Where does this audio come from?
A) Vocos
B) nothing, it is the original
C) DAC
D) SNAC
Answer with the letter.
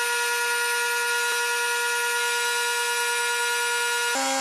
B